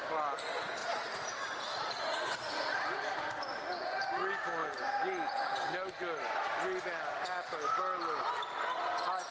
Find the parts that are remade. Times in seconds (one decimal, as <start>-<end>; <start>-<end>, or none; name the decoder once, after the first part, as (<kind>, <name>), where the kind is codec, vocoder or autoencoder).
0.8-3.1 (vocoder, Vocos)

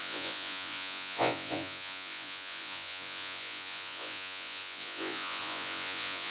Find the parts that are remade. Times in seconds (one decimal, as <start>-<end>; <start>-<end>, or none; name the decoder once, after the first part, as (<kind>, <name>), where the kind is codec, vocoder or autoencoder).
0.0-6.3 (vocoder, Vocos)

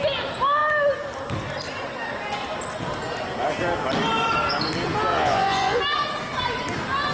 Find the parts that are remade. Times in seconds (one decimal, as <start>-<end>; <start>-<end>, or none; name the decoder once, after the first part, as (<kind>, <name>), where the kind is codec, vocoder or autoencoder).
5.1-5.8 (vocoder, Vocos)

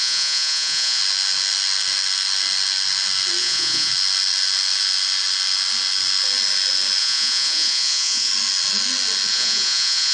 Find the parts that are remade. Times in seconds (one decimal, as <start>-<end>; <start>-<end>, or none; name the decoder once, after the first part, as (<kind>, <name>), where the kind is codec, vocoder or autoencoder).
0.0-1.0 (vocoder, Vocos); 3.4-3.9; 7.0-8.3; 9.3-10.1

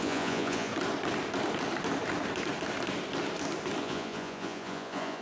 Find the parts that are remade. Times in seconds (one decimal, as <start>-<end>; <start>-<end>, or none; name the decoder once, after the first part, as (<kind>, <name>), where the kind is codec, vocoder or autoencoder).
0.0-0.7 (vocoder, Vocos); 3.8-5.2

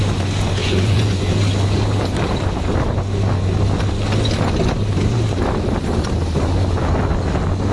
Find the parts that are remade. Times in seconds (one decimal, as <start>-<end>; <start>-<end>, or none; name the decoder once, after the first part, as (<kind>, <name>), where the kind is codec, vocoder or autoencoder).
0.6-1.3 (vocoder, Vocos)

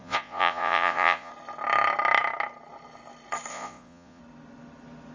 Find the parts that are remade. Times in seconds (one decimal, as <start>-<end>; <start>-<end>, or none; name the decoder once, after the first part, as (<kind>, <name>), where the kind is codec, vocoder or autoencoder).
0.0-1.3 (vocoder, Vocos); 3.5-4.2

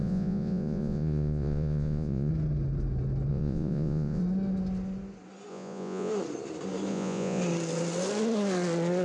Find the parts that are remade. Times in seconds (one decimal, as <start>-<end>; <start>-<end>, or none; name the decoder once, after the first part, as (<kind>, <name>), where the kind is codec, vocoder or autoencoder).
0.0-2.3 (vocoder, Vocos); 3.3-4.2; 5.5-6.1; 6.9-7.4